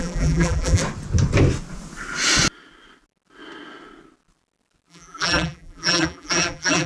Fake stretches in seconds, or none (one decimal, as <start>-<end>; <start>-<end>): 0.0-0.8; 4.9-6.9